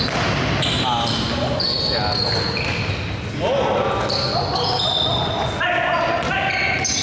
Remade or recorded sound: recorded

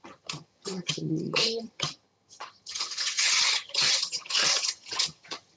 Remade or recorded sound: remade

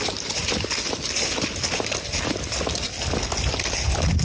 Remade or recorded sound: recorded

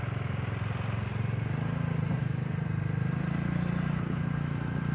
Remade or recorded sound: recorded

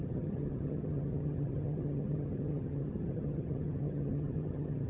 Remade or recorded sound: remade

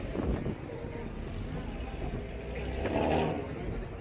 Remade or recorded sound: recorded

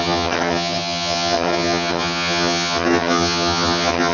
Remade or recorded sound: remade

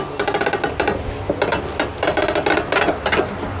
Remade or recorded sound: recorded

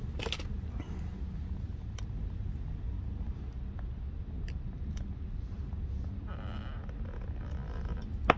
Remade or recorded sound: recorded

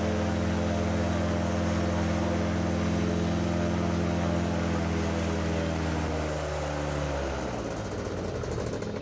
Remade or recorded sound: recorded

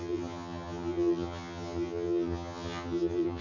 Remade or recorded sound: remade